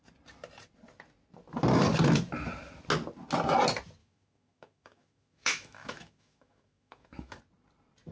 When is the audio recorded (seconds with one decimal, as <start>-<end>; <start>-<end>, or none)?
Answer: 0.0-4.0; 7.4-8.1